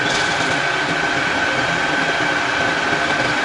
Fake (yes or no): no